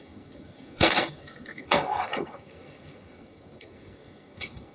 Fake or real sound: fake